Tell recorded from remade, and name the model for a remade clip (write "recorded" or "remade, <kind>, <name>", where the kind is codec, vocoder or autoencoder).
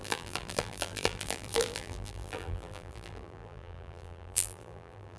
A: remade, vocoder, BigVGAN v2